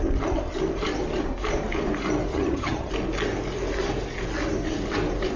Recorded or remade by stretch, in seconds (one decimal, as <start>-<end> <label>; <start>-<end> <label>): 0.0-2.3 recorded; 2.3-2.9 remade; 2.9-5.4 recorded